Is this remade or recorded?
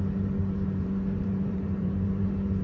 remade